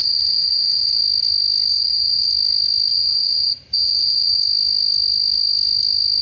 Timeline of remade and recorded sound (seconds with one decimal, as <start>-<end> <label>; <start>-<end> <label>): 0.0-1.0 remade; 1.0-1.7 recorded; 1.7-2.3 remade; 2.3-2.9 recorded; 2.9-4.4 remade; 4.4-6.2 recorded